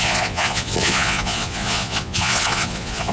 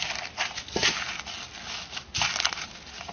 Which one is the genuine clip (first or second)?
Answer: second